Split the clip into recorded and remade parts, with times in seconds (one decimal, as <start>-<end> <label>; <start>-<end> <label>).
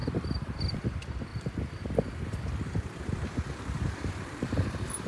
0.0-1.3 remade; 1.3-2.8 recorded; 2.8-5.1 remade